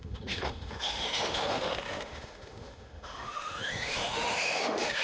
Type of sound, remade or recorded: remade